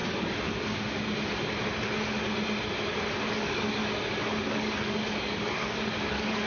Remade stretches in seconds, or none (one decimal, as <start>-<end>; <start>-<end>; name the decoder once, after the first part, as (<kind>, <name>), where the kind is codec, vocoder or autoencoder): 3.3-3.8 (codec, DAC); 4.5-6.5